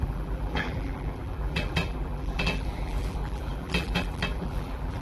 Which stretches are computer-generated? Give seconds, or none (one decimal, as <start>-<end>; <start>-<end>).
0.0-5.0